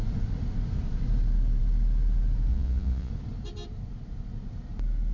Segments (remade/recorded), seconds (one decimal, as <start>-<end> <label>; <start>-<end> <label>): 0.0-2.5 recorded; 2.5-3.1 remade; 3.1-5.1 recorded